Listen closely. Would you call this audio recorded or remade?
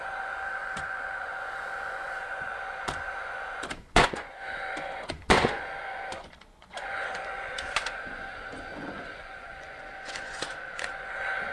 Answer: remade